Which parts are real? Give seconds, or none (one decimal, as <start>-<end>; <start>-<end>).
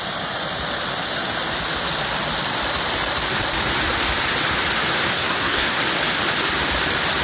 0.0-5.1; 5.8-7.2